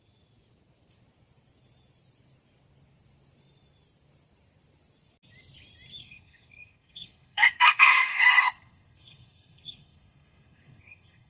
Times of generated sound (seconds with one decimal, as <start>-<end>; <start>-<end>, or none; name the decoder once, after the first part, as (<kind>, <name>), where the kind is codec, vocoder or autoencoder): 6.0-11.3 (codec, SNAC)